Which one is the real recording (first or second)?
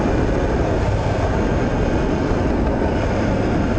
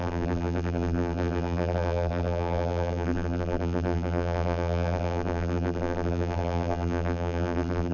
first